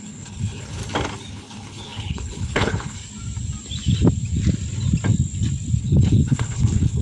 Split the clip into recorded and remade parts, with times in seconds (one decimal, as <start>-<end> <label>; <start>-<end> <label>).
0.0-0.8 remade; 0.8-1.3 recorded; 1.3-3.0 remade; 3.0-5.8 recorded; 5.8-7.0 remade